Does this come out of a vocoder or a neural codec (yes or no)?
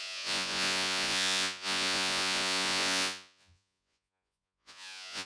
yes